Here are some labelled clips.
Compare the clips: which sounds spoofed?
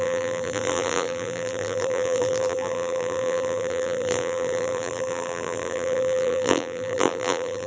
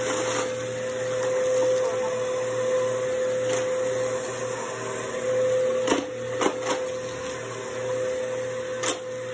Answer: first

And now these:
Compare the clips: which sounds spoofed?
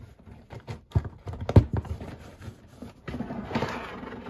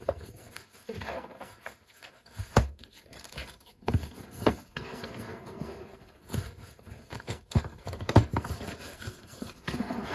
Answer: second